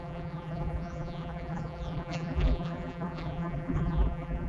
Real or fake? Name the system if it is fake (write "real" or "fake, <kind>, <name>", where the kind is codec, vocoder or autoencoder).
fake, vocoder, BigVGAN v2